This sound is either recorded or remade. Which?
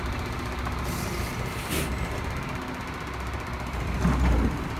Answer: recorded